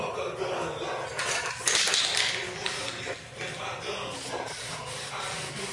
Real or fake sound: real